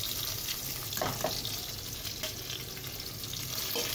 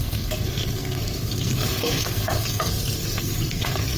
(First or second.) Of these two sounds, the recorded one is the first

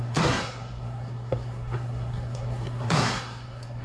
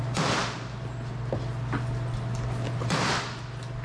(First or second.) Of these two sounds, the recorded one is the second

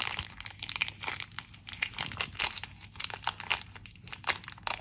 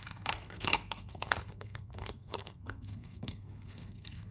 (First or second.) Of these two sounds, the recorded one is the first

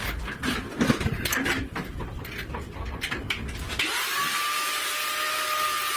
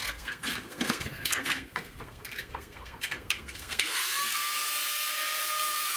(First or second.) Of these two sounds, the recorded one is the first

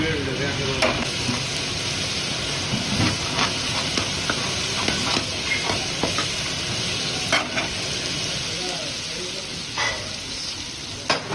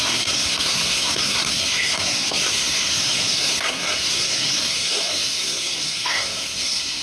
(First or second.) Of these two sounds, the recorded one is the first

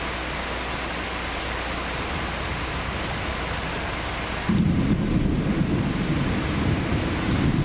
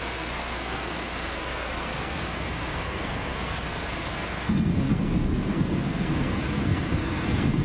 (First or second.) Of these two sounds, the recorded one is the first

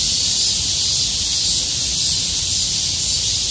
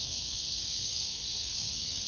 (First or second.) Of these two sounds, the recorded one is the first